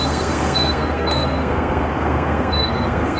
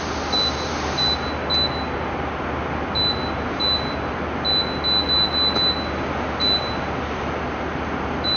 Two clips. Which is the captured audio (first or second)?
second